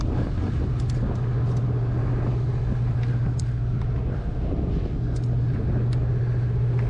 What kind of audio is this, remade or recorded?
recorded